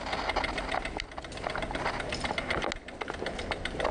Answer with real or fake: real